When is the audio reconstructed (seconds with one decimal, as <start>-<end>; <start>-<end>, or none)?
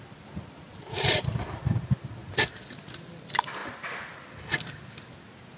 0.7-1.6; 2.2-2.7